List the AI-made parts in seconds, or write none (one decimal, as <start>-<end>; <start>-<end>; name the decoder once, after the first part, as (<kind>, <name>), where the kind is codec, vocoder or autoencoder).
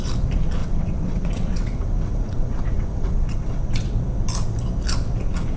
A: 0.6-4.0 (vocoder, WaveNeXt)